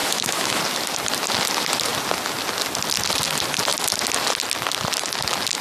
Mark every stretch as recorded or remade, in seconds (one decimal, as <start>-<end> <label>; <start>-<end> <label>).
0.0-0.6 remade; 0.6-5.6 recorded